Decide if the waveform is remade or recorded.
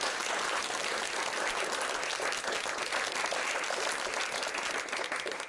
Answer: recorded